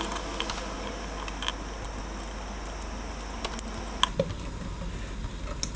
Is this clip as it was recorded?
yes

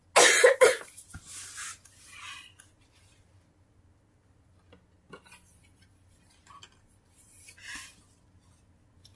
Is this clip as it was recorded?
yes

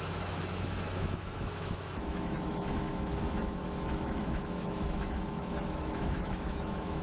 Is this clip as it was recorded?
no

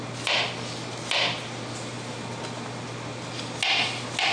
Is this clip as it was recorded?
yes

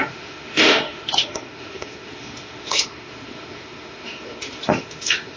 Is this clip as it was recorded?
no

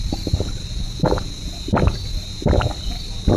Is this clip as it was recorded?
yes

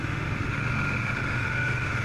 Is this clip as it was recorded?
no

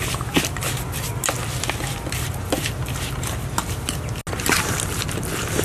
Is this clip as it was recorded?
yes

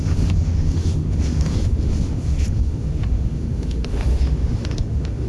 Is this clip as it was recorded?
no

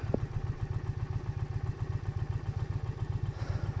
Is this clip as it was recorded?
yes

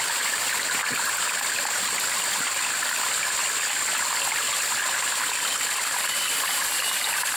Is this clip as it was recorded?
yes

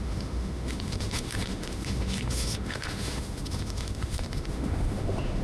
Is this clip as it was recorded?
no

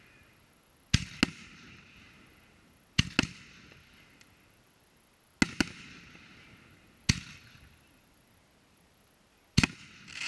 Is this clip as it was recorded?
yes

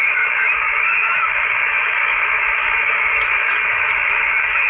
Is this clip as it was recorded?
no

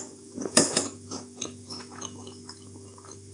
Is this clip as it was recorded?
no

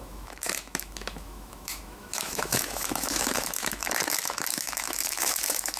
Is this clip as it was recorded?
no